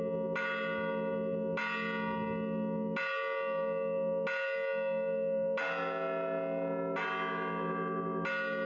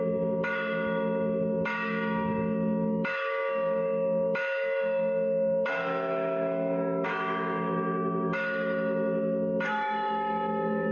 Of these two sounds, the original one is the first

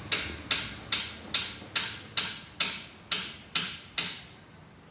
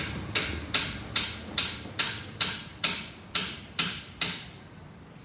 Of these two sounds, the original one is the first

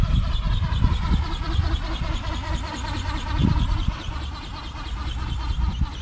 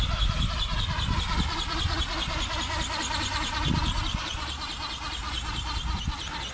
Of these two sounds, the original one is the second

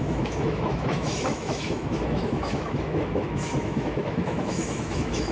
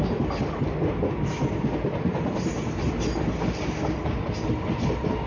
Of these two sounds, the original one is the second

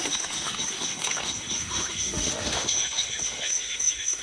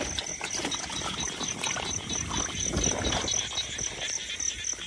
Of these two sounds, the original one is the second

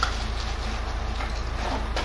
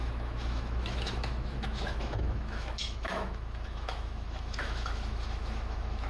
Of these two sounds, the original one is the first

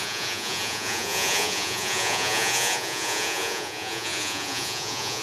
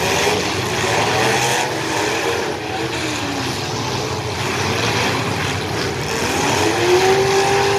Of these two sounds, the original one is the second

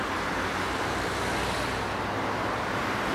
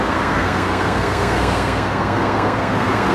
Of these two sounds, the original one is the first